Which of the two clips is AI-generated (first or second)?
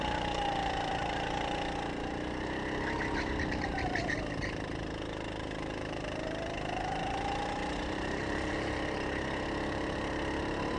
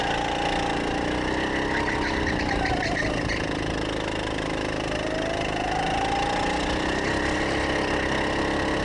first